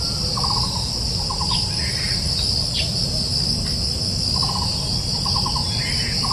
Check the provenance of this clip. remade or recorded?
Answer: recorded